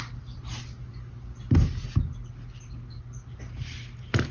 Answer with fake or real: real